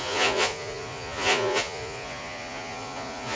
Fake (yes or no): yes